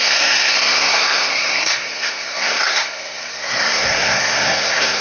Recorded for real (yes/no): no